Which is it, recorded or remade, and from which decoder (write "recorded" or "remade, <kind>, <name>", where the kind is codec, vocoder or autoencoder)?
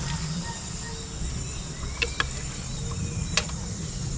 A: recorded